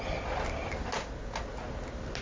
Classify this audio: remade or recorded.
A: recorded